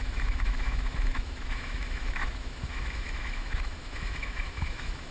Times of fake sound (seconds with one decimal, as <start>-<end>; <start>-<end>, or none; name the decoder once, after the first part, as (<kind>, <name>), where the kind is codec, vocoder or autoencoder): 0.0-5.1 (autoencoder, DAC-VAE)